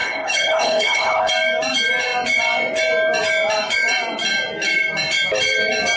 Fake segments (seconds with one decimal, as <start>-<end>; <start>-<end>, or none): 0.0-1.3